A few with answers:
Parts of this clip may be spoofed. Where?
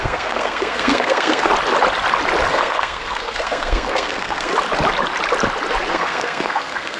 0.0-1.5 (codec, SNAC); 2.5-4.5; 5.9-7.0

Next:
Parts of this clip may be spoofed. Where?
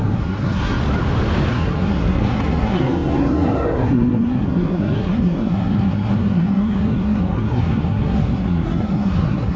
0.0-0.8 (codec, SNAC); 1.5-9.6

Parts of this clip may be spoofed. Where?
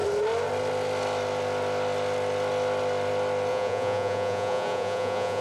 3.5-5.4 (vocoder, Vocos)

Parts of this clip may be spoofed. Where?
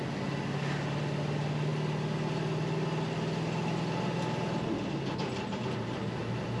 none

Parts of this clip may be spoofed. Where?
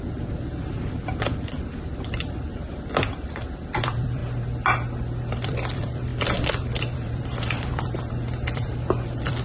0.0-4.2 (vocoder, BigVGAN v2); 5.3-9.4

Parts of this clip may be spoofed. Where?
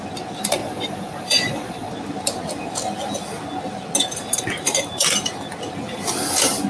0.6-1.9 (vocoder, Vocos)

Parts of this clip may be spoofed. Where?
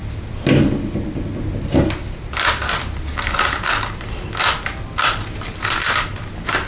none